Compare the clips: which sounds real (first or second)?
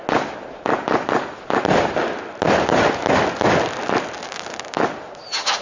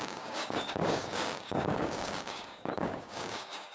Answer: first